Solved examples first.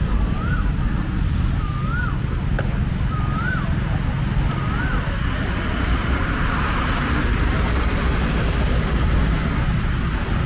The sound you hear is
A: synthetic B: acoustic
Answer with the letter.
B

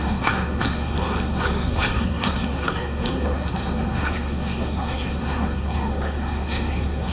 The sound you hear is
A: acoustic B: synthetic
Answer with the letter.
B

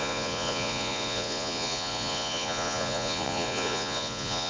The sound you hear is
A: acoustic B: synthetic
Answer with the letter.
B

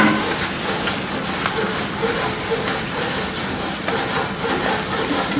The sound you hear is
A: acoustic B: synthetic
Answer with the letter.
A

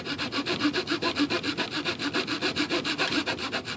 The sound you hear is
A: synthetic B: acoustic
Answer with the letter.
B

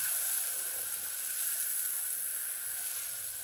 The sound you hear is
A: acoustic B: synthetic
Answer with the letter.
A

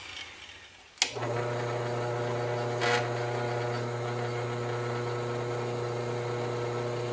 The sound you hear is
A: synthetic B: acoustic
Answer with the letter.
B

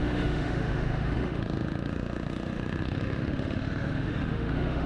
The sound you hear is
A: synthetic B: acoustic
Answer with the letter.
A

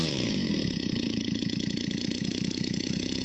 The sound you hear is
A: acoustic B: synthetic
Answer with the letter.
B